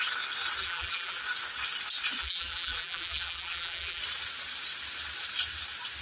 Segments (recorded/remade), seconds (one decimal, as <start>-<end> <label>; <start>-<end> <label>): 0.0-0.6 recorded; 0.6-1.2 remade; 1.2-2.2 recorded; 2.2-4.0 remade; 4.0-6.0 recorded